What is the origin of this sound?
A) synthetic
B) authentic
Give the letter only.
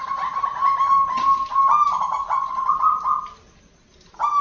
B